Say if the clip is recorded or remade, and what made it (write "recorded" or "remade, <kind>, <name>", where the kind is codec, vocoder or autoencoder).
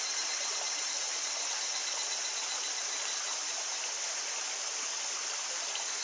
recorded